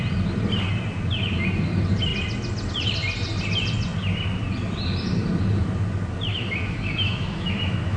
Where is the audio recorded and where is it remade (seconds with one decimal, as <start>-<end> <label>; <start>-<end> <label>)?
0.0-6.3 recorded; 6.3-8.0 remade